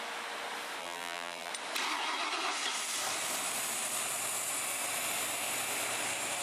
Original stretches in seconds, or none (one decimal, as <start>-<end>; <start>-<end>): 0.0-0.8; 1.5-6.4